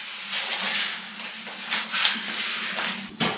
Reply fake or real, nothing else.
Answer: real